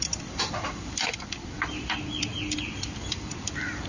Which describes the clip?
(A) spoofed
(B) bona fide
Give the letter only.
A